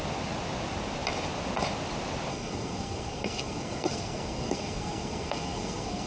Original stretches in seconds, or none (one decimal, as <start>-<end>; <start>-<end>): 0.0-2.3